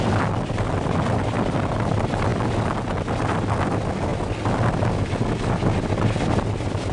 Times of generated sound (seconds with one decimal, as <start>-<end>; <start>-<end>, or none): none